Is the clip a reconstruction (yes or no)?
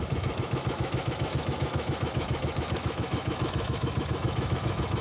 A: yes